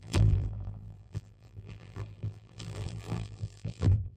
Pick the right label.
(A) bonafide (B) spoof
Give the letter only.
B